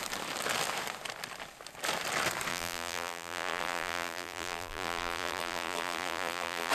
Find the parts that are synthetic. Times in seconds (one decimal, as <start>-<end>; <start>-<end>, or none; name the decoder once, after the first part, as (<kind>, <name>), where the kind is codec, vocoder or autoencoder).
2.5-6.7 (vocoder, BigVGAN v2)